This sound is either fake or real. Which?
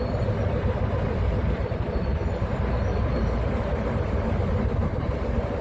fake